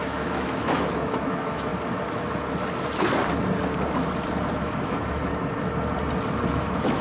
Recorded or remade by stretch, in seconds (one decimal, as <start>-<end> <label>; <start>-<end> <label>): 0.0-1.7 remade; 1.7-4.5 recorded; 4.5-5.3 remade; 5.3-6.5 recorded; 6.5-7.0 remade